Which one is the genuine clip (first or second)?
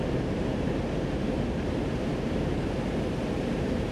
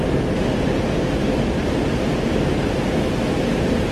second